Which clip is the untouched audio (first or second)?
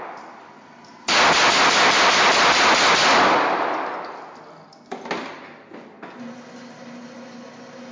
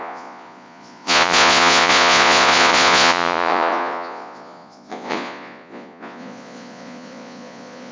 first